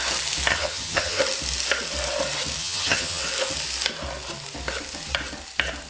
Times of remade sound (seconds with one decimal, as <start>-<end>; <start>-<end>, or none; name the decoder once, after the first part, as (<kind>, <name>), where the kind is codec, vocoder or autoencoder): 0.5-1.2 (vocoder, HiFi-GAN); 2.6-3.2